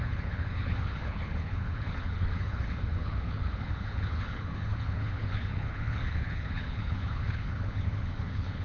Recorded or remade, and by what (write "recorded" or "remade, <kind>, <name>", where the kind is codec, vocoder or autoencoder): remade, codec, HILCodec